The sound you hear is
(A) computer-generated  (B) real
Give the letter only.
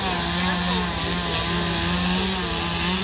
B